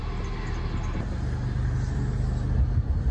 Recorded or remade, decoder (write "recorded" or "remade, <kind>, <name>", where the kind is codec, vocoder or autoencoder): recorded